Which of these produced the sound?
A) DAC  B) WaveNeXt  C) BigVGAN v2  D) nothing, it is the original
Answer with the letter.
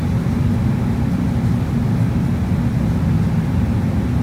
D